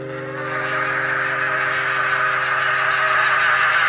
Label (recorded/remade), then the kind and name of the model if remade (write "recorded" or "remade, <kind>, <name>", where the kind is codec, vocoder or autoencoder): recorded